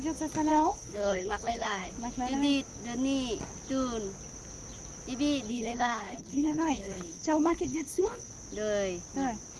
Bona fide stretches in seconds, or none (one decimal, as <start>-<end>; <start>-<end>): 0.0-0.5; 1.9-5.5; 8.3-9.6